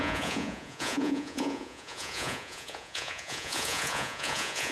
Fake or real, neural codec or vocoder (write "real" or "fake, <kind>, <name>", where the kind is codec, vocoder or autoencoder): fake, vocoder, Vocos